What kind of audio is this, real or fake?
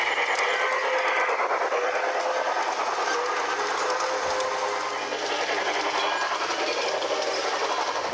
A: real